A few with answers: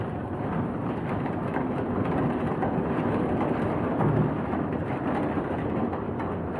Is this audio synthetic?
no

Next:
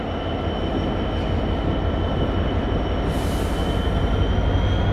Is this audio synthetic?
no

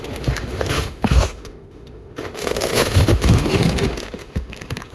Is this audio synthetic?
yes